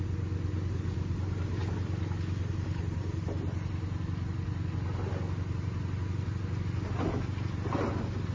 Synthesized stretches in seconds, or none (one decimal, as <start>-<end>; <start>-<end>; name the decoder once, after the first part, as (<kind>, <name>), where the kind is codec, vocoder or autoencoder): none